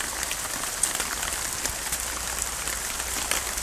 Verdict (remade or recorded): recorded